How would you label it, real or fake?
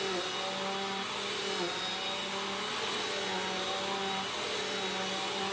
real